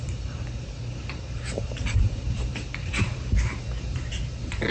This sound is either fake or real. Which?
fake